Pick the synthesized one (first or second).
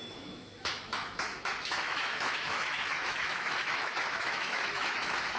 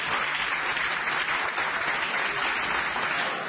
first